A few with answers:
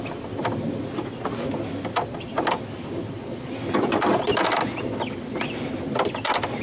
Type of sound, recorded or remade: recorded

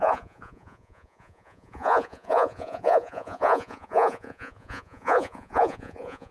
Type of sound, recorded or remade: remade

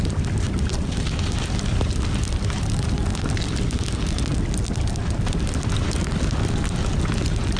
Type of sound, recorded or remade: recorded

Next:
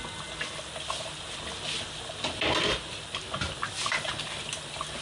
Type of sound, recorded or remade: recorded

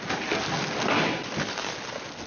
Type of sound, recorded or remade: recorded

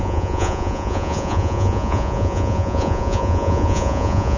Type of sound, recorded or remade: remade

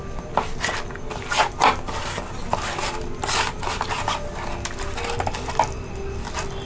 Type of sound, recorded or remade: recorded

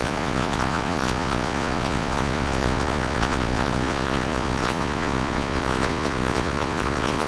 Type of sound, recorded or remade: remade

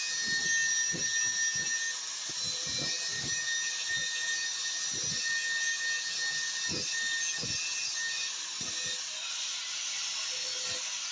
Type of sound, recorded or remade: recorded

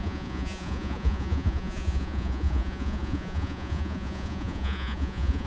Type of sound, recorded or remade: remade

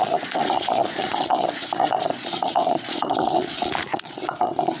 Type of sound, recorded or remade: remade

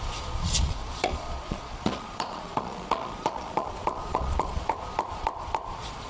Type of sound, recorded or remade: remade